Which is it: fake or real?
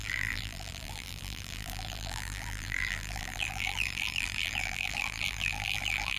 fake